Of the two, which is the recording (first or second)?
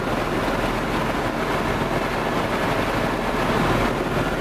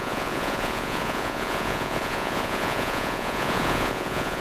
first